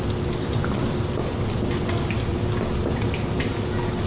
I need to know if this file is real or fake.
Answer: real